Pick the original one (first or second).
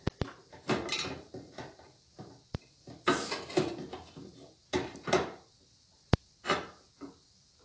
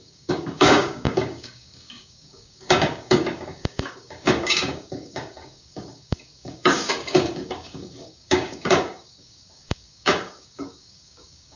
first